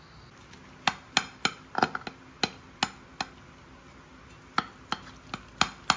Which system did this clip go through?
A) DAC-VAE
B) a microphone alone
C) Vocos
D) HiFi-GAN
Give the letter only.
B